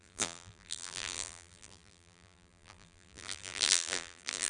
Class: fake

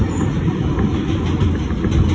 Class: real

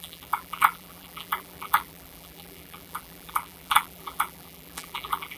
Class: fake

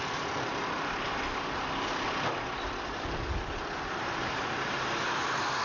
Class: fake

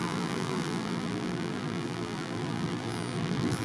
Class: fake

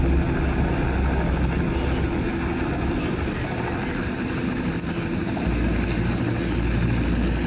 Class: real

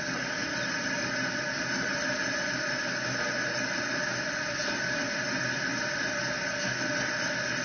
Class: real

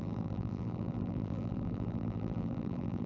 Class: fake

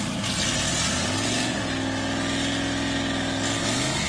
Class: real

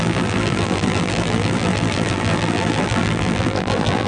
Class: fake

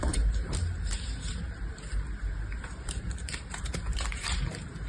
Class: fake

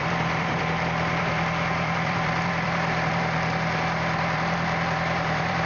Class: fake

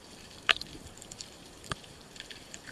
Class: fake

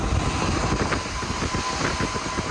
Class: real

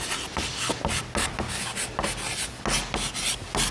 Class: real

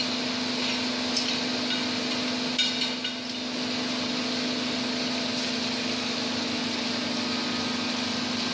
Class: real